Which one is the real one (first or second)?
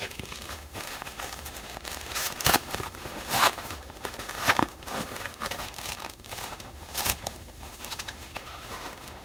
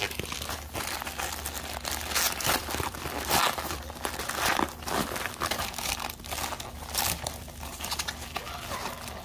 second